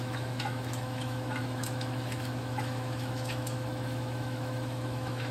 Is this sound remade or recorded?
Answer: remade